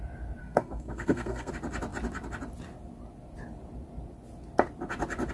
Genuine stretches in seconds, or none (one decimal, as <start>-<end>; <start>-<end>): 0.0-0.4; 1.5-5.3